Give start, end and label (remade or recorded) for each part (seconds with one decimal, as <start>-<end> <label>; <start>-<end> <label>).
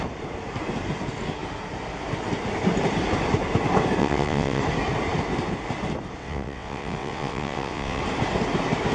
0.0-4.0 recorded; 4.0-4.6 remade; 4.6-6.2 recorded; 6.2-8.0 remade; 8.0-8.9 recorded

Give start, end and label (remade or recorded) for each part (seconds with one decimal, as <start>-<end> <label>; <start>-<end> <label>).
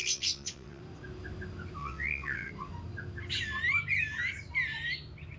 0.0-0.8 remade; 0.8-1.8 recorded; 1.8-2.5 remade; 2.5-5.4 recorded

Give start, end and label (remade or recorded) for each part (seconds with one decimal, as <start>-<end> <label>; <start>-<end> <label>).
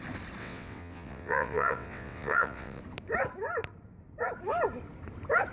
0.0-0.4 recorded; 0.4-2.8 remade; 2.8-5.5 recorded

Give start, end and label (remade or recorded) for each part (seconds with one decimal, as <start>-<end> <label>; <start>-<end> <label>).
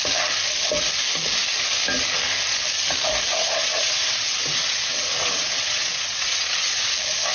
0.0-3.4 recorded; 3.4-6.7 remade; 6.7-7.3 recorded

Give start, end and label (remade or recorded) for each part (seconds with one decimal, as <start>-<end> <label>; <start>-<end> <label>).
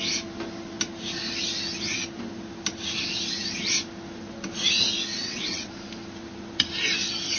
0.0-5.2 recorded; 5.2-5.7 remade; 5.7-7.4 recorded